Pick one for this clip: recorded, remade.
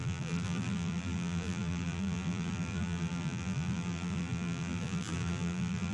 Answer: remade